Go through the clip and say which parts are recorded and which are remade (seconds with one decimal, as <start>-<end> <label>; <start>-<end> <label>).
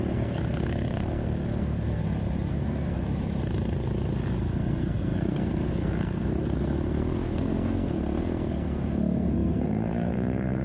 0.0-2.0 remade; 2.0-2.5 recorded; 2.5-3.0 remade; 3.0-4.4 recorded; 4.4-10.6 remade